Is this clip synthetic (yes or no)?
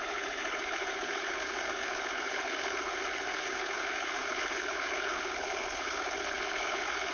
yes